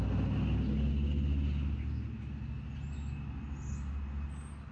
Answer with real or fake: real